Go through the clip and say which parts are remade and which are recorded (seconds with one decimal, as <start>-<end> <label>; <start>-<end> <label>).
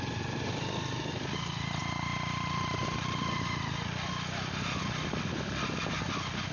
0.0-6.5 recorded